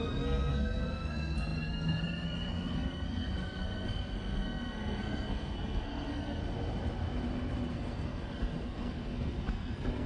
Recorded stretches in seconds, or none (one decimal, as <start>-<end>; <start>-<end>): 6.4-7.7